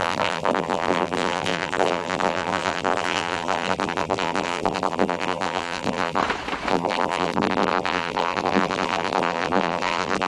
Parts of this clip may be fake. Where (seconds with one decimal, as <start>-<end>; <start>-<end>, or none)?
0.0-6.2; 6.7-10.3